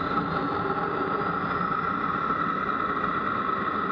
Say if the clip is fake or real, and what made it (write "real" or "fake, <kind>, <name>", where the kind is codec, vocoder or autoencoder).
real